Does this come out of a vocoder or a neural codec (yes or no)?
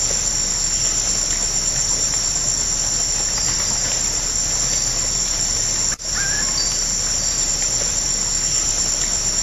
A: no